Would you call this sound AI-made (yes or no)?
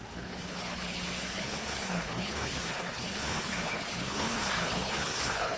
yes